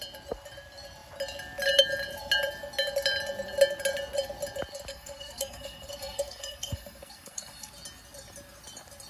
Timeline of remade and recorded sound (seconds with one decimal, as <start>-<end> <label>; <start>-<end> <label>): 0.0-4.9 recorded; 4.9-7.7 remade; 7.7-9.1 recorded